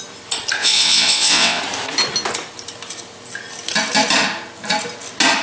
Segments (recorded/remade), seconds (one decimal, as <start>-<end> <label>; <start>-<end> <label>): 0.0-0.6 recorded; 0.6-1.6 remade; 1.6-5.4 recorded